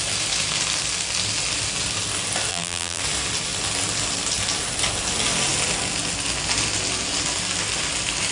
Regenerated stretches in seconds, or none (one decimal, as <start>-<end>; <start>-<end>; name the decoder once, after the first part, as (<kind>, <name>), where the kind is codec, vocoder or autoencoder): 2.5-3.0 (vocoder, BigVGAN v2)